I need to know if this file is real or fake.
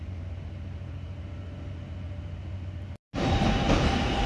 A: real